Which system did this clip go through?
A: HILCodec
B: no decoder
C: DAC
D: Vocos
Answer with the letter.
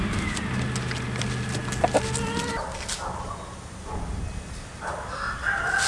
B